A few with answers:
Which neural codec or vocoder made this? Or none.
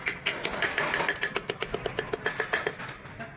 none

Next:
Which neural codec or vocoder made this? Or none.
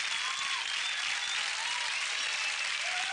none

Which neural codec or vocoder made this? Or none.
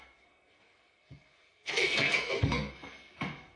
codec, SNAC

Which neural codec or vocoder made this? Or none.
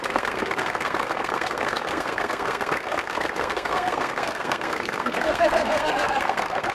codec, SNAC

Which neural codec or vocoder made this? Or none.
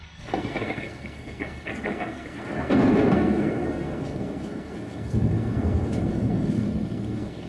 codec, SNAC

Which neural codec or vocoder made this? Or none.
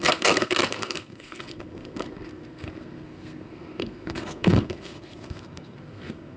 codec, SNAC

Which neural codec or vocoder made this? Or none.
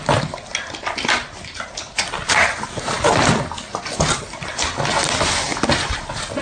none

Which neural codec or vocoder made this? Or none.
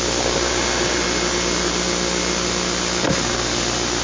none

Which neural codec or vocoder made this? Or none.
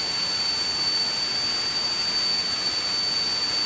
none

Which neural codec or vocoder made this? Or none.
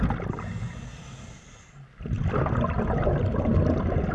none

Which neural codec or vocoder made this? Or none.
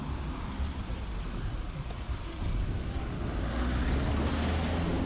none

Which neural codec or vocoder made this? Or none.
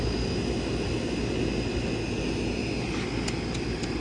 none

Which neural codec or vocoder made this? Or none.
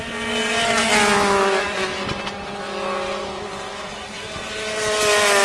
none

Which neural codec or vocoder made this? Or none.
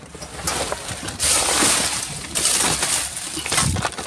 none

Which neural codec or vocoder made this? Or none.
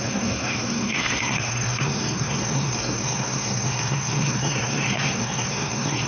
codec, SNAC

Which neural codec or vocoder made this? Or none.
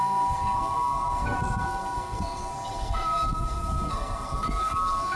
codec, SNAC